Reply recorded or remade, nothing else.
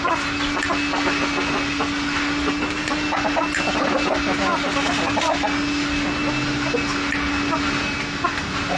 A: recorded